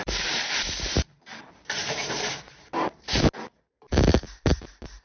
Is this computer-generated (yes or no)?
yes